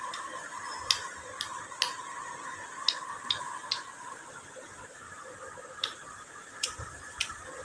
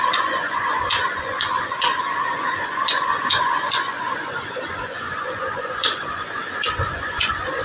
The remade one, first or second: second